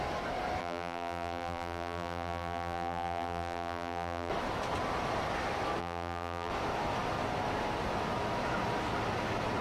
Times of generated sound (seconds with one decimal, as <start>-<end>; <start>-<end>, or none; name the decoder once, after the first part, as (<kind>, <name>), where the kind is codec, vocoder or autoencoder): 0.6-4.3 (vocoder, BigVGAN v2); 5.8-6.5